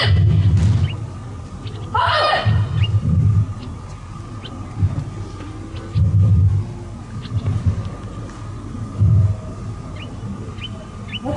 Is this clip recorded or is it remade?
recorded